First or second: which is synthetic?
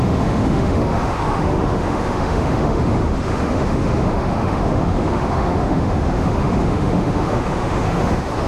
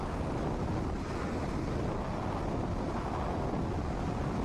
first